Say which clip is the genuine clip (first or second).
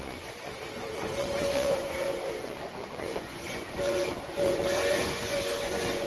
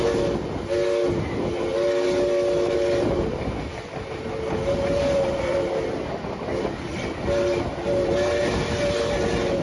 second